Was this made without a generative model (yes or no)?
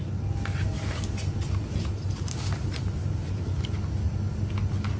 yes